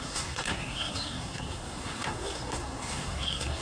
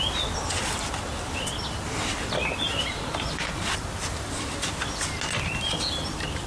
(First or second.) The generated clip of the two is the first